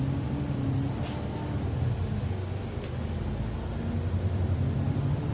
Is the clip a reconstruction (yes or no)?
no